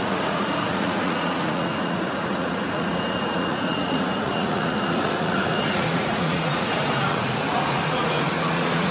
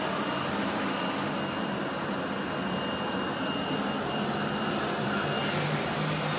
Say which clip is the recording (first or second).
second